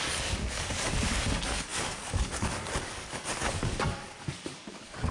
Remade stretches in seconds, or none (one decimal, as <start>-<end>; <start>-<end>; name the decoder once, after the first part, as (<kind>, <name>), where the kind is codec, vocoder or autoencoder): 0.0-5.1 (codec, DAC)